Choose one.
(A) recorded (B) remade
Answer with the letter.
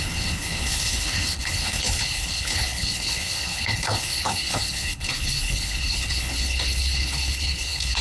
B